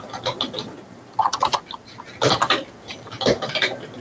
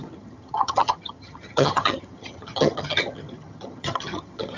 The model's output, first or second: second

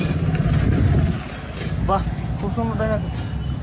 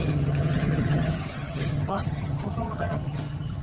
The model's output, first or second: second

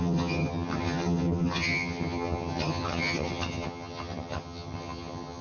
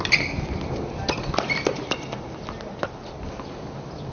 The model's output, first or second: first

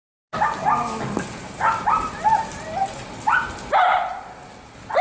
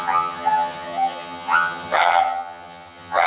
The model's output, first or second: second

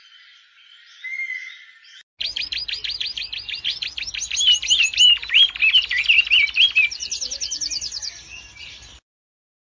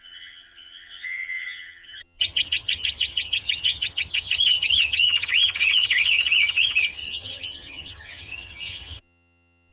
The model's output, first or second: second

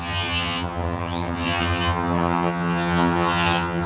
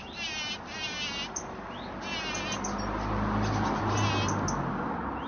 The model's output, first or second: first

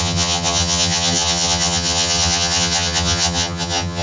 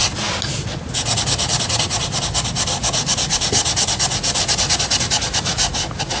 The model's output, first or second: first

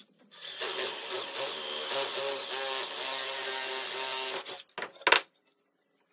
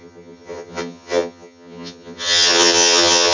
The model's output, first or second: second